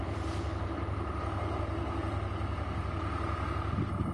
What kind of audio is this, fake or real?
real